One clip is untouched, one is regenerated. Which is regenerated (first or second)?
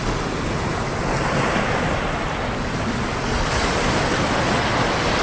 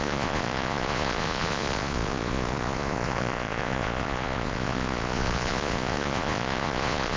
second